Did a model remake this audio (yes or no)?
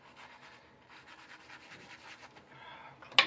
no